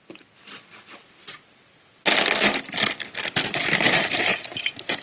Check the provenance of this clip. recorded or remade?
recorded